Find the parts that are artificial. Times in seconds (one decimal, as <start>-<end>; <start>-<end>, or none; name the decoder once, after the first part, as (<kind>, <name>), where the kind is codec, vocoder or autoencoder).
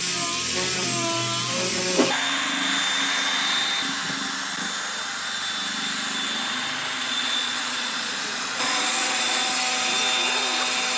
7.0-9.5 (vocoder, Vocos)